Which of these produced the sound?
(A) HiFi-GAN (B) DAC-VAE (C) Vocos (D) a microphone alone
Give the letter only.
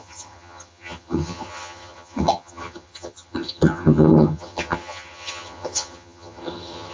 A